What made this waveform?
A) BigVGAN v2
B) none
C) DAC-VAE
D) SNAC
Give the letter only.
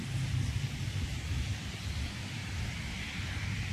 B